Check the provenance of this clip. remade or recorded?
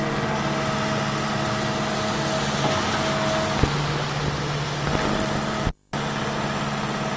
recorded